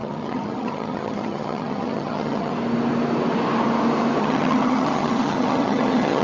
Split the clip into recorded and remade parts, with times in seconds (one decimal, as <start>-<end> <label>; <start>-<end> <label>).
0.0-2.5 remade; 2.5-4.2 recorded; 4.2-6.2 remade